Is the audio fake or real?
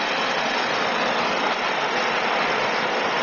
real